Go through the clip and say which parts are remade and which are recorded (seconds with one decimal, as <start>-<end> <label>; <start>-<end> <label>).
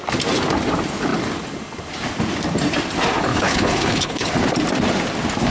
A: 0.0-3.3 recorded; 3.3-4.3 remade; 4.3-5.5 recorded